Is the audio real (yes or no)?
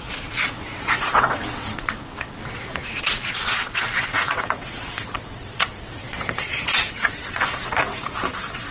no